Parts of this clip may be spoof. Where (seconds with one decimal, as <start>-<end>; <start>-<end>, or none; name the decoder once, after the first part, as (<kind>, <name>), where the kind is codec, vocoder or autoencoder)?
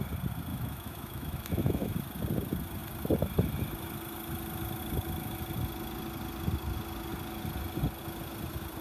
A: 0.5-1.9 (autoencoder, DAC-VAE)